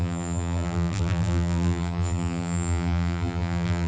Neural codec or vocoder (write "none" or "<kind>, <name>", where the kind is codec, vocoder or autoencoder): vocoder, BigVGAN v2